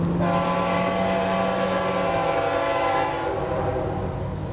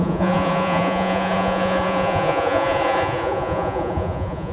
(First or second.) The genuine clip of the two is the first